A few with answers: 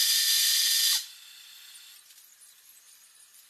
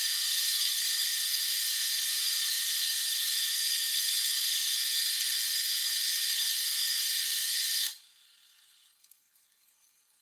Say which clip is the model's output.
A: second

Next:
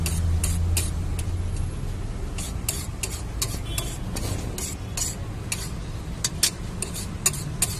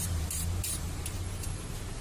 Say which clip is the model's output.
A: second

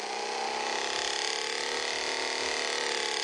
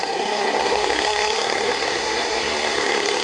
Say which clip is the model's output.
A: second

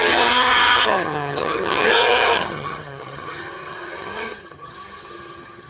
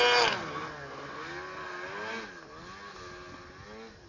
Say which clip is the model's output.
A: first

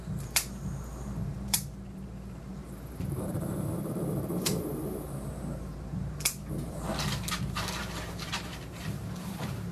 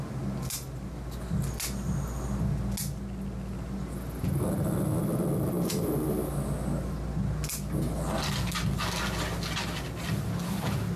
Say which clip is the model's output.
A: first